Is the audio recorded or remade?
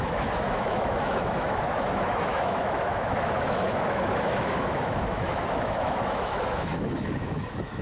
remade